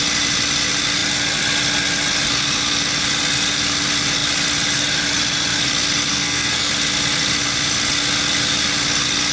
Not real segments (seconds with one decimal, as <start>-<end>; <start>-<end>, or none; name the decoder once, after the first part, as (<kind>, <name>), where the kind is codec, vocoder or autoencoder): 6.1-6.7 (codec, SNAC)